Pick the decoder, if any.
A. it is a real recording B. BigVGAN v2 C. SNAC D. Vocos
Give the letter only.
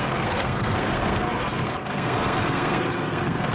C